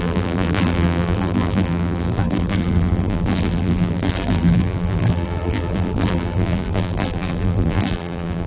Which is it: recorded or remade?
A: remade